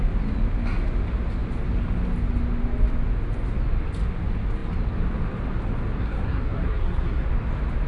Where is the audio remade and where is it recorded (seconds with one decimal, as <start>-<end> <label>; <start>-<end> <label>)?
0.0-6.0 recorded; 6.0-7.3 remade; 7.3-7.9 recorded